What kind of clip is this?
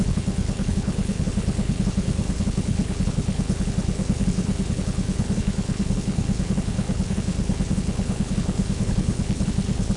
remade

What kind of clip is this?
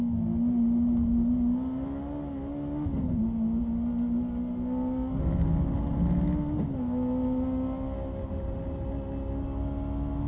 recorded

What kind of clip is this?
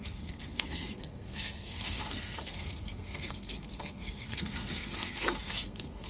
remade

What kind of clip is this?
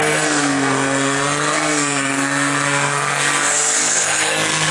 remade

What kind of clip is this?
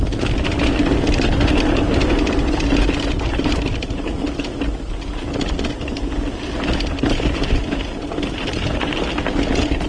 recorded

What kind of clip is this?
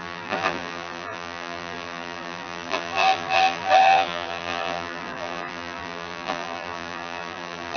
remade